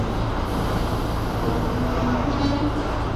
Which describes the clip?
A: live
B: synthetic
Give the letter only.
A